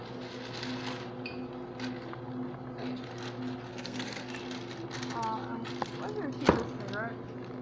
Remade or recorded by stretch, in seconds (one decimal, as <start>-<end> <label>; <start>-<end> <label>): 0.0-3.7 recorded; 3.7-4.3 remade; 4.3-7.6 recorded